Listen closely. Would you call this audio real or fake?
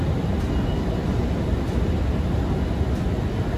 real